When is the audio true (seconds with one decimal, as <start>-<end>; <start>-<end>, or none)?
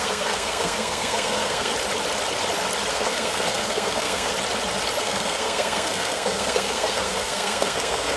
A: 1.7-2.9; 4.3-5.0